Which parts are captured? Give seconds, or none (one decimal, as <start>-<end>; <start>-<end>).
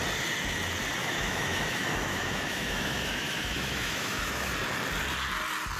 0.0-1.0; 4.5-5.8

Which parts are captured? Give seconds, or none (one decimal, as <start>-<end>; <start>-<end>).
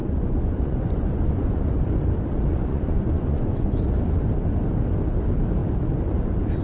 1.7-2.5; 3.8-6.6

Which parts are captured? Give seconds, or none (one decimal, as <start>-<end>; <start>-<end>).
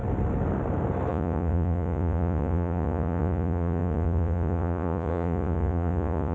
0.0-1.1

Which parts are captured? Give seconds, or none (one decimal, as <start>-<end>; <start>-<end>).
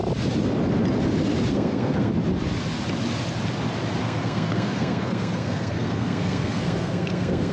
0.0-1.5; 2.1-4.0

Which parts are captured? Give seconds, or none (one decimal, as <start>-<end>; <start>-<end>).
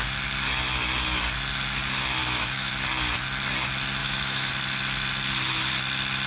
0.0-2.2; 2.7-4.0; 4.5-6.3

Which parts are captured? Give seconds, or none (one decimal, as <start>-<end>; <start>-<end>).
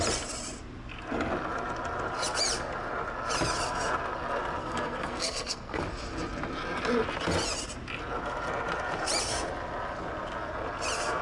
0.0-4.6; 5.8-11.2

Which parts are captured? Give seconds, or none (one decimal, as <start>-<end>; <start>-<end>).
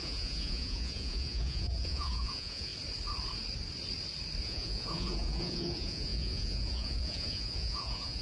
2.7-4.4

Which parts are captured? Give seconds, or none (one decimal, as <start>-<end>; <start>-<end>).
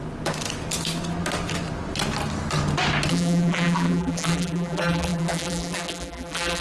0.0-3.1